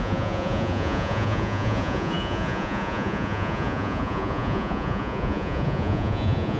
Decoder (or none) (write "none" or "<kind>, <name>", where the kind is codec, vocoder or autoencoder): vocoder, Vocos